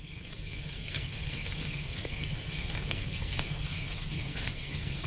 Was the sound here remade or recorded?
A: remade